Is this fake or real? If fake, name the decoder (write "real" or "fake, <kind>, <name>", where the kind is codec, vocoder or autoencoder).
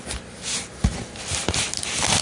real